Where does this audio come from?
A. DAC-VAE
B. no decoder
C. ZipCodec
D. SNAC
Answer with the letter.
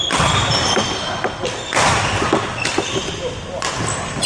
B